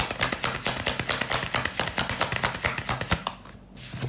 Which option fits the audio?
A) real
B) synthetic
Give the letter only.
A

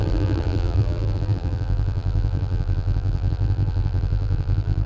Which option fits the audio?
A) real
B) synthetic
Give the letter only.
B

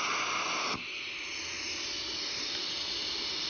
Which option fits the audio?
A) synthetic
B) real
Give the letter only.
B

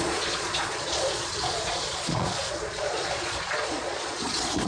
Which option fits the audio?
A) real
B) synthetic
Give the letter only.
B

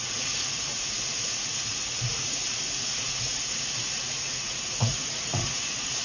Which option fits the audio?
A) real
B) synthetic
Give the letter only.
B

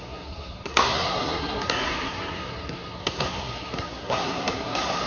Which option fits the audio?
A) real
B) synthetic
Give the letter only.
B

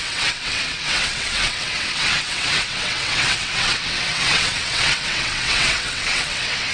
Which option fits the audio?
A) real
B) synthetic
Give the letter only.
B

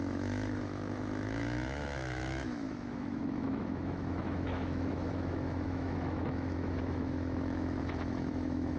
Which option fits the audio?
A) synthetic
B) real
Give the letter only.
A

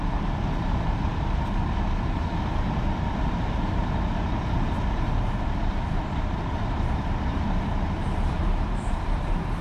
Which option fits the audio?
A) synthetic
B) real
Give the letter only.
A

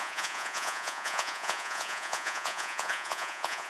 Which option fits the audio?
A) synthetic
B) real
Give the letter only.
A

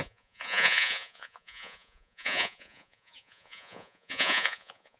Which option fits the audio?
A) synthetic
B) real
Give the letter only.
A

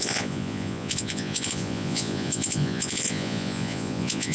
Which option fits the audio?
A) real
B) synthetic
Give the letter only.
B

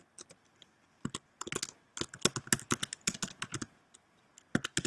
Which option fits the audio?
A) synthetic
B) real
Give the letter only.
B